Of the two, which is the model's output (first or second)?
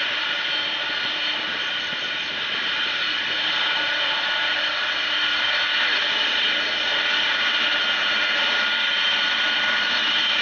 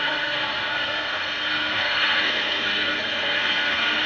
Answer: second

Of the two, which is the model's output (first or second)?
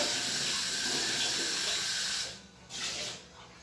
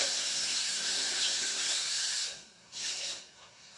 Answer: second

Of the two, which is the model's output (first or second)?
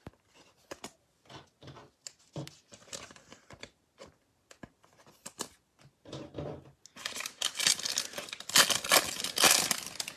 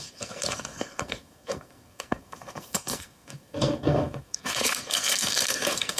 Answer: second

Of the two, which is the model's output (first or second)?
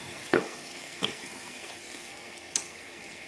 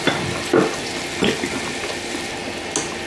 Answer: first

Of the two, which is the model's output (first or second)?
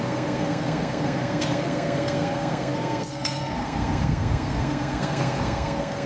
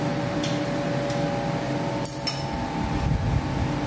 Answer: first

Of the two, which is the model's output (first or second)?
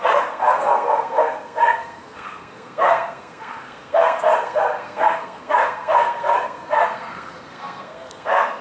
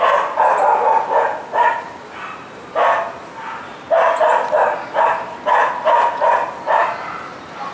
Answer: first